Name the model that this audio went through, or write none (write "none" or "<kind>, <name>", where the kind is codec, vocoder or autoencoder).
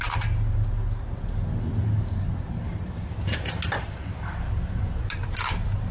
none